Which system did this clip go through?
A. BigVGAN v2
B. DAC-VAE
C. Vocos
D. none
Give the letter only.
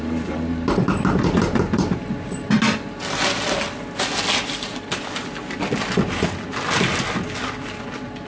D